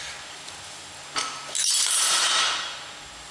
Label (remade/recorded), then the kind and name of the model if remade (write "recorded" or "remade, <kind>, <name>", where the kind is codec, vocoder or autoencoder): recorded